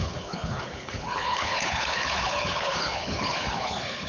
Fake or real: fake